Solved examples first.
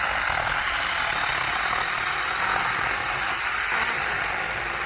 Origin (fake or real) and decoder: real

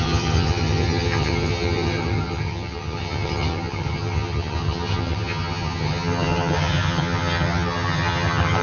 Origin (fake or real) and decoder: fake, vocoder, HiFi-GAN